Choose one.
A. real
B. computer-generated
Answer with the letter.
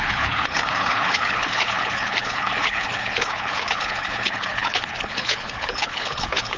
B